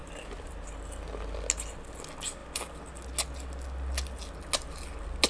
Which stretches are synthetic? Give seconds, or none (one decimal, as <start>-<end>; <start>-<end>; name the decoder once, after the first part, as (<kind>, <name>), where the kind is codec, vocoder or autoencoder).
0.0-0.7 (vocoder, BigVGAN v2)